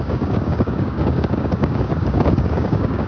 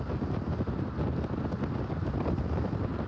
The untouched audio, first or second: second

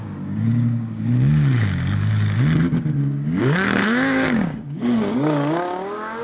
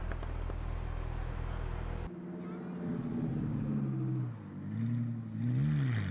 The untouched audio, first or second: second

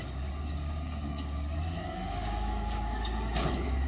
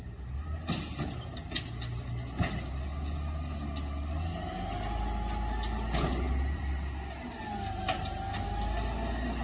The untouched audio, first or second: second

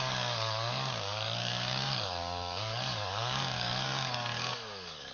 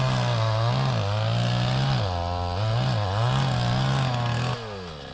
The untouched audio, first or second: second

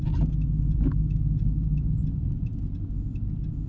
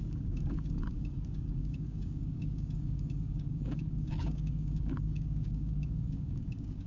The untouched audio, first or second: first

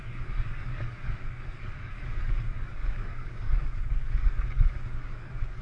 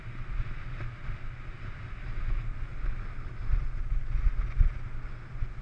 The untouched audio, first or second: second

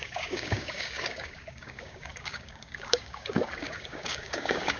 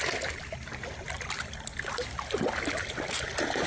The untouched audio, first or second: second